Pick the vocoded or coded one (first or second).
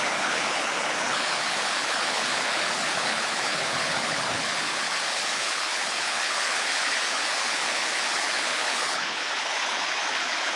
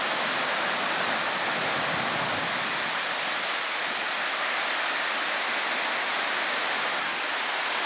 first